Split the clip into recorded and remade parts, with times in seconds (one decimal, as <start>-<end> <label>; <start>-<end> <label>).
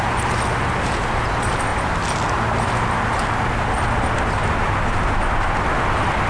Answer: 0.0-6.3 recorded